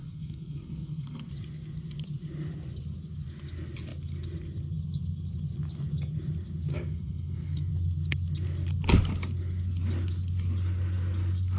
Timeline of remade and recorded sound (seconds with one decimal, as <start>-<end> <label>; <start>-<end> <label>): 0.0-1.3 remade; 1.3-6.7 recorded; 6.7-7.7 remade; 7.7-11.6 recorded